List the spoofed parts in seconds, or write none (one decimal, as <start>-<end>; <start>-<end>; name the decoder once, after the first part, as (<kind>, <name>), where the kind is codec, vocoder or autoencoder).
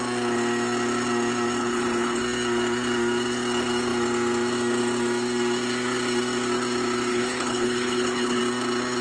1.6-2.2 (codec, HILCodec); 7.1-8.4